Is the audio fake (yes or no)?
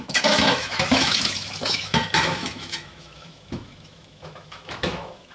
yes